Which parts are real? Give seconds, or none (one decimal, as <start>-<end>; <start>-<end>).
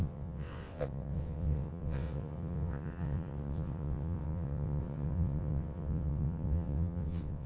none